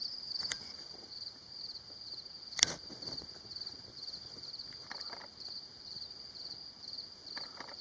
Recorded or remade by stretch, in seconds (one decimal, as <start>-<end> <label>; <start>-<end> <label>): 0.0-7.8 recorded